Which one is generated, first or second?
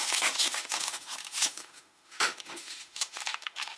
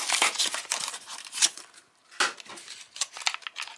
first